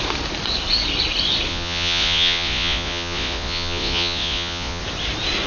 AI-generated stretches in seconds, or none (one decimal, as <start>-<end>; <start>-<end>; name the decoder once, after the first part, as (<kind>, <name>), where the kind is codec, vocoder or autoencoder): 1.5-4.8 (vocoder, Vocos)